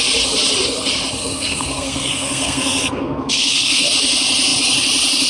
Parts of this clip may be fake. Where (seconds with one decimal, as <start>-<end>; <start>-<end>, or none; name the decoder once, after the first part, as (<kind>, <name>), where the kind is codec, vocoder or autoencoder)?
1.2-3.9 (codec, SNAC)